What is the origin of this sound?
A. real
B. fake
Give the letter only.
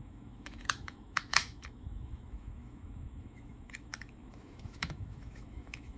B